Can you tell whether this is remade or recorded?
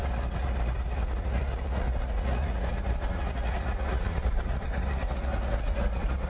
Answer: remade